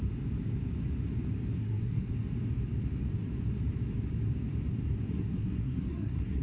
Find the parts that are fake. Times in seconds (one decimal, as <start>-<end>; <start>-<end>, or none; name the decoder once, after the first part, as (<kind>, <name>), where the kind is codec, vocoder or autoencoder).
1.6-2.1 (codec, SNAC); 5.1-6.4